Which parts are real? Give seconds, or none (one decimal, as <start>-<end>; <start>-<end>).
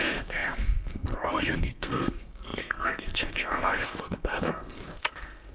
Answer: none